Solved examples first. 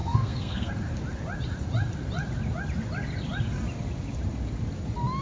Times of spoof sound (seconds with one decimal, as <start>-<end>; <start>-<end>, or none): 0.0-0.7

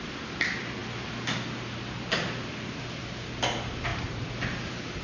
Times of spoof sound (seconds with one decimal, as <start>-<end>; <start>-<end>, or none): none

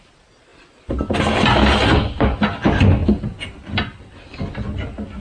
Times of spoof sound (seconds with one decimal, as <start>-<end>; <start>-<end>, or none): none

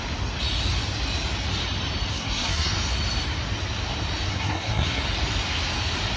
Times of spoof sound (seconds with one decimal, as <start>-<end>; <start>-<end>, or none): 2.1-2.7; 4.3-5.0

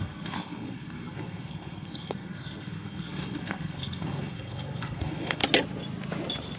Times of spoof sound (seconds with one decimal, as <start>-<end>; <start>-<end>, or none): 0.0-5.4

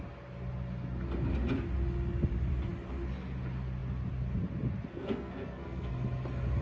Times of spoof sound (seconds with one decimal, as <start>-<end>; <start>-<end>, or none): 4.9-5.9

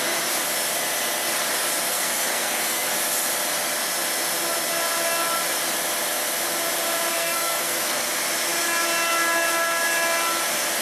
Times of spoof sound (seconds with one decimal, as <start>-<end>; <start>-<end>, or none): 1.9-2.9; 7.1-8.1

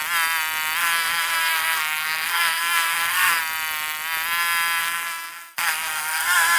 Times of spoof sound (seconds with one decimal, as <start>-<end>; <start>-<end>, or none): 0.8-3.4; 4.8-6.6